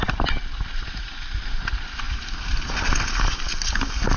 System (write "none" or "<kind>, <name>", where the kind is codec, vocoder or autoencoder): none